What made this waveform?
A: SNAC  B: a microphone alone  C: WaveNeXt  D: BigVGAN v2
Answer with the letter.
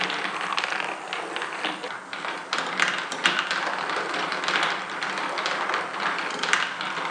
B